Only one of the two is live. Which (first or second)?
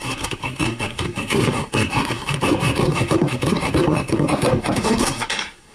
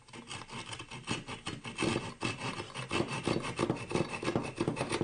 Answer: second